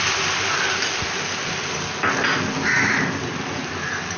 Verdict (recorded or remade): recorded